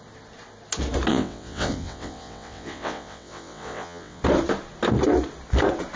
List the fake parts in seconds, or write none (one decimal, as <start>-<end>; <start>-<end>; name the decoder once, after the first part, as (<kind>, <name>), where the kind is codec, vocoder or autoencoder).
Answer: 1.1-4.2 (vocoder, WaveNeXt)